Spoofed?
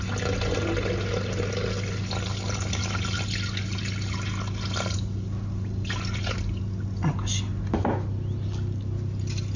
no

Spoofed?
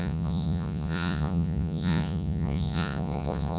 yes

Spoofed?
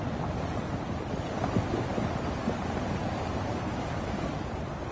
no